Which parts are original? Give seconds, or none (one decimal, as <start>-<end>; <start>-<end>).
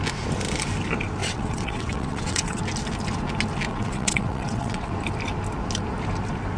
0.0-1.2; 2.6-3.7; 4.9-6.6